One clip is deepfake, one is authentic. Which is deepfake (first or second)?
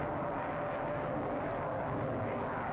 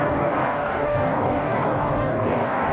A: second